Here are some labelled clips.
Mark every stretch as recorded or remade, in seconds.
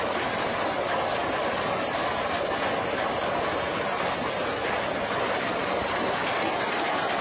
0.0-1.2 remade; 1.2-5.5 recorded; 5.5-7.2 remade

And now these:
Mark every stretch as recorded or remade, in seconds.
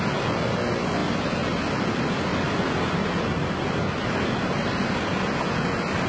0.0-2.3 recorded; 2.3-6.1 remade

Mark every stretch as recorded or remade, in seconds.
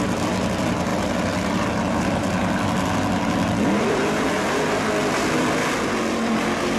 0.0-6.8 recorded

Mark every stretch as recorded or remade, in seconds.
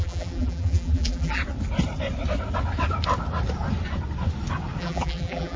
0.0-1.4 remade; 1.4-4.8 recorded; 4.8-5.6 remade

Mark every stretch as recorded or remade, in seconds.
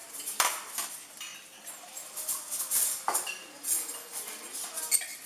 0.0-0.7 remade; 0.7-5.3 recorded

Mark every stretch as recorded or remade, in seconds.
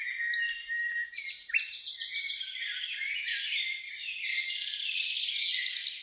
0.0-1.4 recorded; 1.4-4.9 remade; 4.9-6.0 recorded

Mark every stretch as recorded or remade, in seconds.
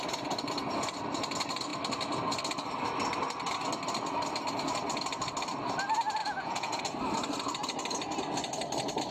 0.0-6.2 recorded; 6.2-6.8 remade; 6.8-9.1 recorded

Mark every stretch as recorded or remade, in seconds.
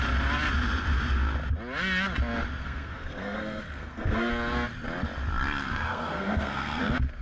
0.0-2.6 recorded; 2.6-4.3 remade; 4.3-5.6 recorded; 5.6-6.8 remade; 6.8-7.2 recorded